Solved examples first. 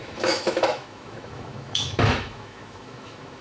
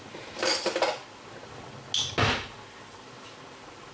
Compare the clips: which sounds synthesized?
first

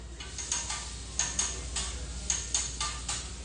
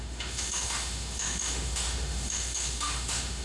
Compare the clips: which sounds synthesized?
second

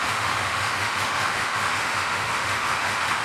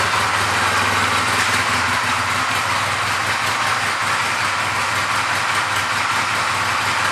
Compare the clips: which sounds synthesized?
first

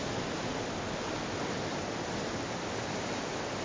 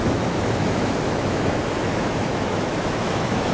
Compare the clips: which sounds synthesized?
second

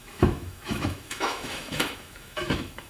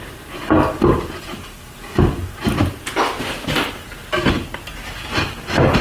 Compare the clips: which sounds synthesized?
first